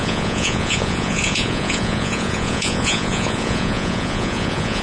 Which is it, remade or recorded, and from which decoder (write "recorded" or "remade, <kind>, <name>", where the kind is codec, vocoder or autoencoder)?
remade, vocoder, Vocos